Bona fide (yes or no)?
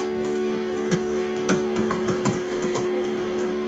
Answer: no